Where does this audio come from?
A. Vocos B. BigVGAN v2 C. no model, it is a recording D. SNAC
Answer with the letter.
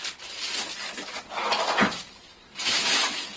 C